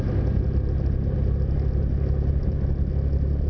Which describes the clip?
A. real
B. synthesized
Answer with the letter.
A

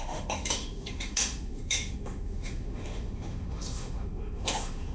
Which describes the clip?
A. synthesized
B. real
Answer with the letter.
A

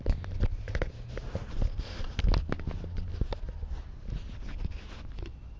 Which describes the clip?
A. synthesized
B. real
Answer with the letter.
B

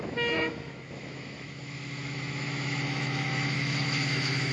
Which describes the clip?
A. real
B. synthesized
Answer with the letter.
B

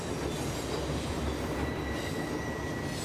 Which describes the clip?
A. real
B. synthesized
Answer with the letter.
A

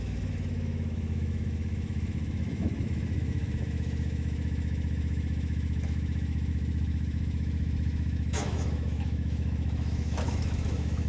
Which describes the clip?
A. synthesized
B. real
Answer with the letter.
A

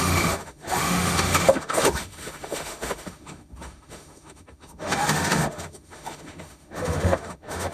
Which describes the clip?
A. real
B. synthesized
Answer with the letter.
B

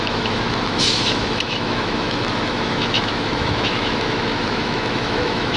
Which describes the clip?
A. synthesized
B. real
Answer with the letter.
A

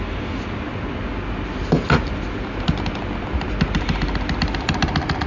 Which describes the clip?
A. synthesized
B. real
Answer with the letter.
B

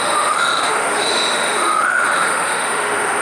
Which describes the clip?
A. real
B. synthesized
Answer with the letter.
B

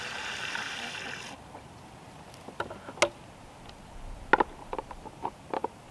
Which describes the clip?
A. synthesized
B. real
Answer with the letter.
B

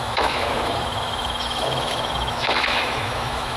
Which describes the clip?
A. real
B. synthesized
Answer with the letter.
B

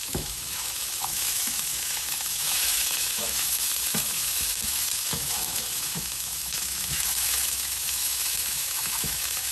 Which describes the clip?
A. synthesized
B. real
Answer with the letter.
A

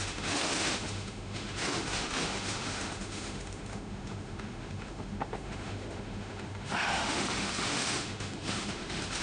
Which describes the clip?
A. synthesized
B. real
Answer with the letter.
A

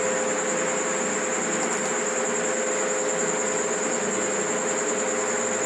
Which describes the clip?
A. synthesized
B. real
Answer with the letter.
B